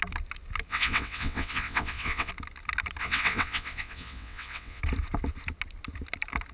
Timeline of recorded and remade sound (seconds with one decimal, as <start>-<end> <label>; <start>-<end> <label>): 0.0-0.7 recorded; 0.7-2.3 remade; 2.3-3.0 recorded; 3.0-4.8 remade; 4.8-6.5 recorded